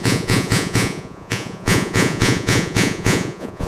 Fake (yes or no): yes